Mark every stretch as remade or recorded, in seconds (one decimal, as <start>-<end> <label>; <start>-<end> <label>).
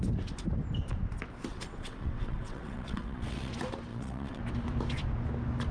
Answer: 0.0-1.5 recorded; 1.5-3.5 remade; 3.5-3.9 recorded; 3.9-4.4 remade; 4.4-5.7 recorded